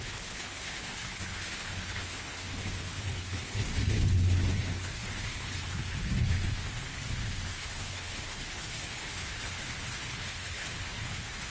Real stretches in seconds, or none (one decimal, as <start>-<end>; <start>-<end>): none